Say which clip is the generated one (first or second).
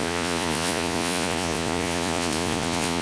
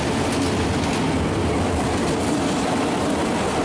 first